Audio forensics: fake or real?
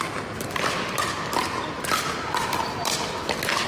real